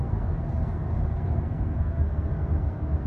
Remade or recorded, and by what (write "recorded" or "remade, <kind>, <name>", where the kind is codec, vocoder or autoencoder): remade, codec, SNAC